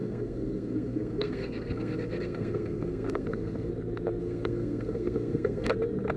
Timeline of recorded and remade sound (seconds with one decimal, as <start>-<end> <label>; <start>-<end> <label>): 0.0-3.7 remade; 3.7-4.2 recorded; 4.2-5.7 remade; 5.7-6.2 recorded